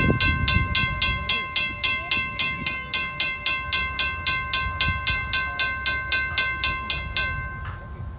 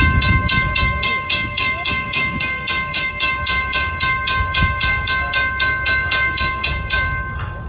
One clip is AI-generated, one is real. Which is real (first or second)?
first